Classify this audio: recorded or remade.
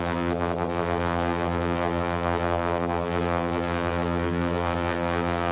remade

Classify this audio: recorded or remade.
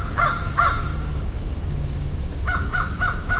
remade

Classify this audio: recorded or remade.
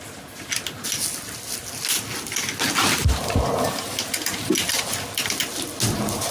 recorded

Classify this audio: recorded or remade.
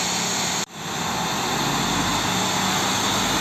recorded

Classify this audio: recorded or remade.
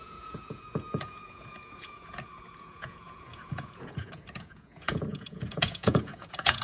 remade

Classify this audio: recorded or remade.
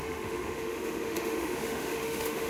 remade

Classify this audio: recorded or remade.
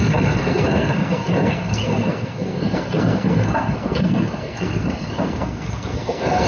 remade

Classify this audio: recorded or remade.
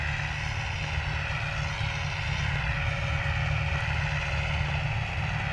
recorded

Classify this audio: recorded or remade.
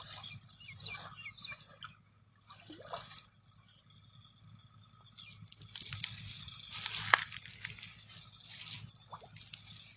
recorded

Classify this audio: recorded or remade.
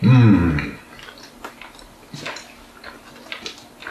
recorded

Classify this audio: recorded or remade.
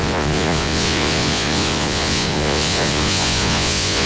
remade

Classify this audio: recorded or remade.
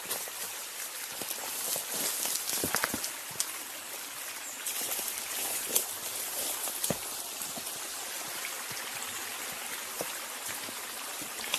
recorded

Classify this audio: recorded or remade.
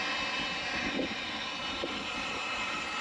recorded